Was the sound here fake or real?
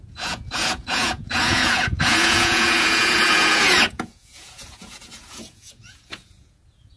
fake